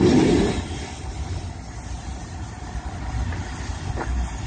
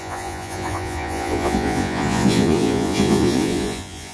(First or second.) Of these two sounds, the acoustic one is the first